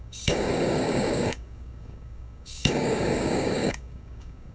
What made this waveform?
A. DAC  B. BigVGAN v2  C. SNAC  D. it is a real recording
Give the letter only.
A